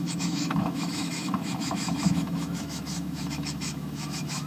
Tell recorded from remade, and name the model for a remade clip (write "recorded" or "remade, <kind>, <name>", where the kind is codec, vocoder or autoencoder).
remade, autoencoder, DAC-VAE